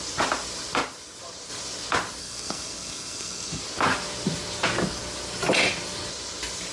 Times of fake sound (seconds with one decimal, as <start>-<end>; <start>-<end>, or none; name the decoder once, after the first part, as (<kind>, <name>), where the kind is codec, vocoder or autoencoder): 2.2-3.6 (codec, SNAC)